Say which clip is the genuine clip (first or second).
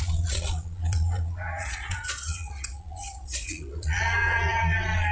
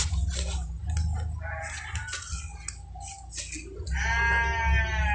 second